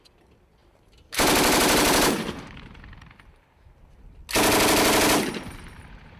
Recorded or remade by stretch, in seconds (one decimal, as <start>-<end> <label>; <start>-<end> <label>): 0.0-0.6 recorded; 0.6-4.2 remade; 4.2-6.2 recorded